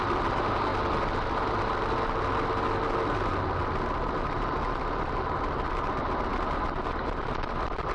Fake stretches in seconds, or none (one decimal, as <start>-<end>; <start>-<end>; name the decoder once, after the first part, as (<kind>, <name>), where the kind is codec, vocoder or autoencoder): none